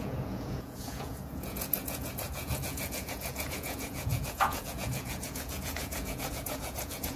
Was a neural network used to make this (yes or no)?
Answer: yes